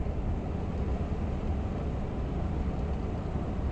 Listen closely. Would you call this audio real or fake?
real